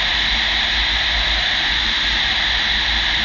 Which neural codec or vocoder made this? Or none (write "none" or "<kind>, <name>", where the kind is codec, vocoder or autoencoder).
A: none